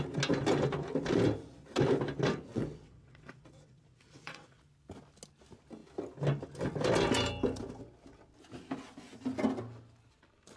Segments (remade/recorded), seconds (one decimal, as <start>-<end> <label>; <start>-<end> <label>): 0.0-2.5 recorded; 2.5-4.6 remade; 4.6-10.6 recorded